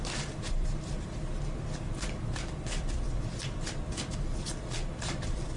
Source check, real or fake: fake